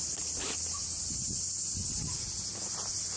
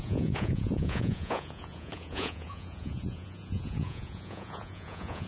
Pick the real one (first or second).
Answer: first